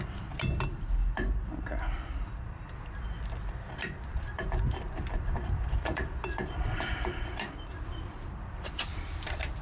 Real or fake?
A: fake